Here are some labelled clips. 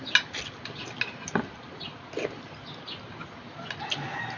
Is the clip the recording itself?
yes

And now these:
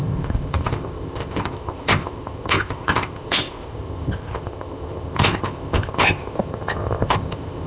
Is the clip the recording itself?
no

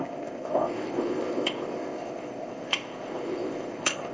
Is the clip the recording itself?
no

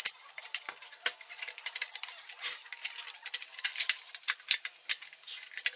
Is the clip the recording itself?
yes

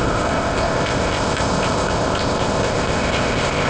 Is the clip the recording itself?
no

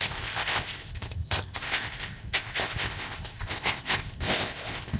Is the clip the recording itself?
no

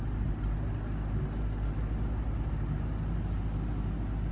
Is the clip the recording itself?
yes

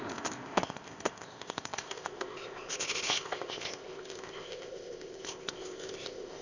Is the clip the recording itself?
no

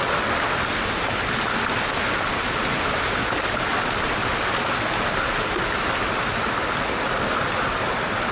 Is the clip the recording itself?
yes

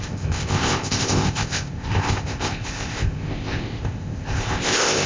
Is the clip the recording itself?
no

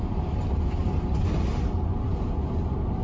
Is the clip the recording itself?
yes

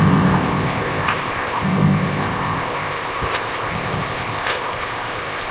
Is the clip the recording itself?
no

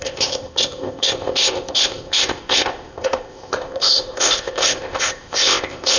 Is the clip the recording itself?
no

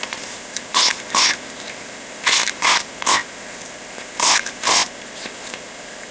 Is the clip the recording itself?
no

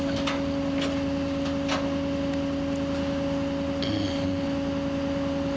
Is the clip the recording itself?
yes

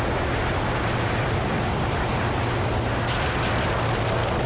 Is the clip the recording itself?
yes